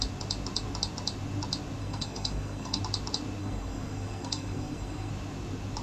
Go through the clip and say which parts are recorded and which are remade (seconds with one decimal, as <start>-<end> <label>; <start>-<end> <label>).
0.0-1.8 recorded; 1.8-2.8 remade; 2.8-3.4 recorded; 3.4-5.1 remade; 5.1-5.8 recorded